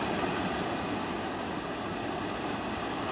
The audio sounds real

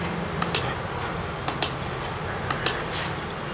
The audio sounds real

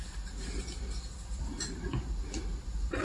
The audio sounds real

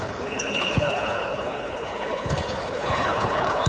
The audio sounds fake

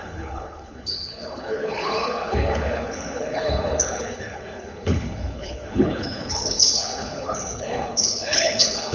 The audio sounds fake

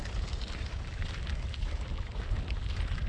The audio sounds real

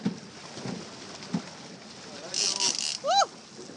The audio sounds real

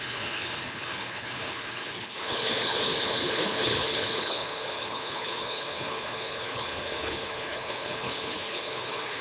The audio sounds fake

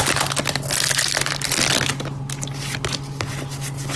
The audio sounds real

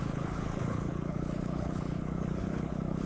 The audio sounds fake